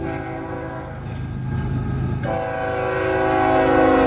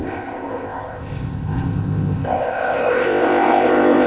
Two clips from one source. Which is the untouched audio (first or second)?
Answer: first